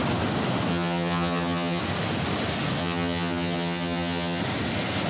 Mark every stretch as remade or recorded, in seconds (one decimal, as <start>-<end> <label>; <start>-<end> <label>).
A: 0.0-0.7 recorded; 0.7-1.8 remade; 1.8-2.8 recorded; 2.8-4.4 remade; 4.4-5.1 recorded